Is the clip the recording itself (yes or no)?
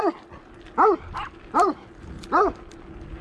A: yes